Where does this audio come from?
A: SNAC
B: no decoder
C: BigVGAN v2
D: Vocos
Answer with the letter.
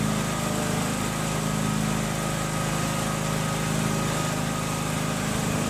B